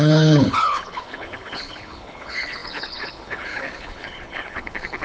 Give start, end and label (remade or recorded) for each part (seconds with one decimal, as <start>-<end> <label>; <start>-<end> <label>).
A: 0.0-5.0 remade